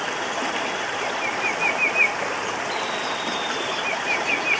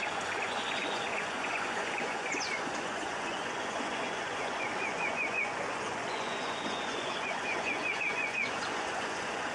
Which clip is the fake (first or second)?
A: second